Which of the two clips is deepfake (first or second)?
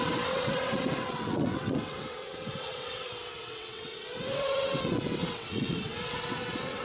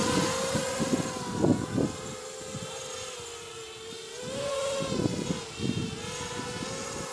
first